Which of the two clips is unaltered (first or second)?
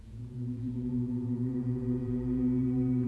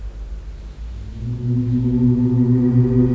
second